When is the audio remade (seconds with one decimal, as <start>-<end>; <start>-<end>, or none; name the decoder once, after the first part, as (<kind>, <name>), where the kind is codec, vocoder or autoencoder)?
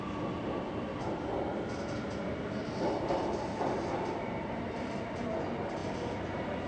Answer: 2.6-5.0 (vocoder, BigVGAN v2)